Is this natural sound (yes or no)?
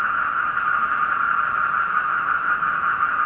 yes